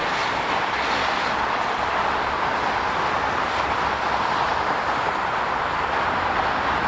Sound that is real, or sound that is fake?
real